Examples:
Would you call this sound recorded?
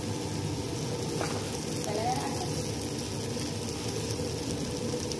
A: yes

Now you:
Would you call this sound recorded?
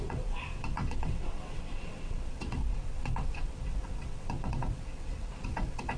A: no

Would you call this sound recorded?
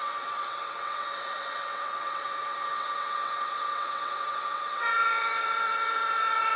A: no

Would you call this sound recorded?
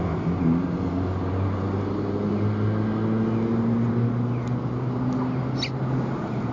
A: yes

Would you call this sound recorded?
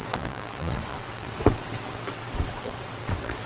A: no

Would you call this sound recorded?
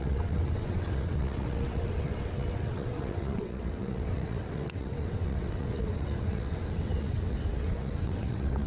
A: no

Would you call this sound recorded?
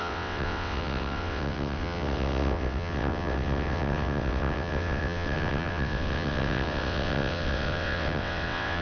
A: no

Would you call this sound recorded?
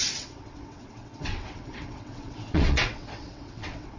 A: no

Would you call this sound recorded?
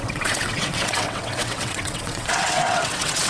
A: no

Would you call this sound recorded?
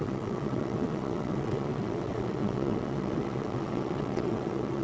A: no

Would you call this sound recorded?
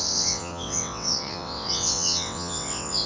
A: no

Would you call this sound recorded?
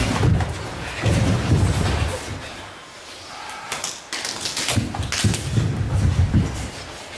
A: yes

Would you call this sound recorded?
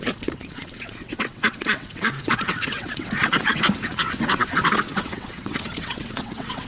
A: no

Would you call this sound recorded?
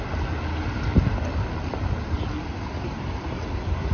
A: yes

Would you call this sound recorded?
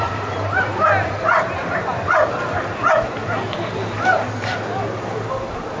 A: yes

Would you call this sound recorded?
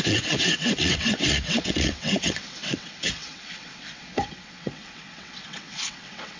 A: no